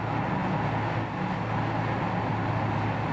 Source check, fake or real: real